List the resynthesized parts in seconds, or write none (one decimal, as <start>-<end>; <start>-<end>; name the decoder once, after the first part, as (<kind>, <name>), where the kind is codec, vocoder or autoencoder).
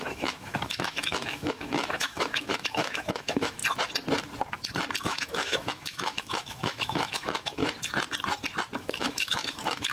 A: 0.0-3.6 (autoencoder, DAC-VAE); 5.0-7.6; 8.8-9.9